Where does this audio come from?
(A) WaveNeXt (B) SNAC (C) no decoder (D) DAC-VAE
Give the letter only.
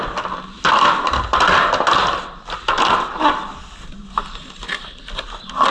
C